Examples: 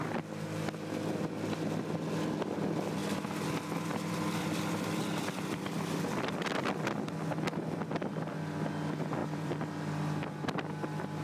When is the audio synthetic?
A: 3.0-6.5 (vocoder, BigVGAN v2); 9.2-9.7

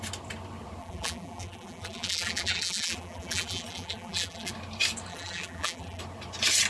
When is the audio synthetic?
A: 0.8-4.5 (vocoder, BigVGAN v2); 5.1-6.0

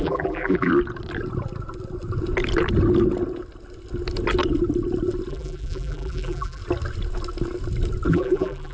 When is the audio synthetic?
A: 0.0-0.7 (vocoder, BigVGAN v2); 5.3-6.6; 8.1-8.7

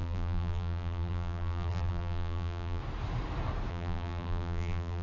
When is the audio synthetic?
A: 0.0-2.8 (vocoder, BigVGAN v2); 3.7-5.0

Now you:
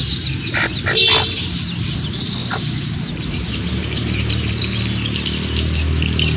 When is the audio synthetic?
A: 2.4-4.6 (vocoder, BigVGAN v2)